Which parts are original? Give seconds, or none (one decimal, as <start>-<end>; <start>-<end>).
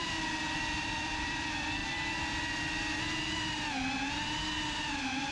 1.8-4.8